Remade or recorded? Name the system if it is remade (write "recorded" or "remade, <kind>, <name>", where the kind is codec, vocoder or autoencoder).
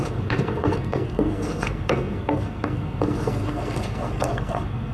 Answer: remade, codec, SNAC